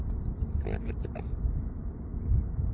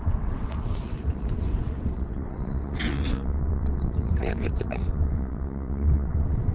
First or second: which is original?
first